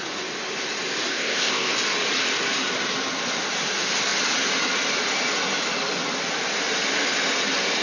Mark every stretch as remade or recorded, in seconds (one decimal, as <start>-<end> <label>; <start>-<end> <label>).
0.0-1.1 recorded; 1.1-1.7 remade; 1.7-7.8 recorded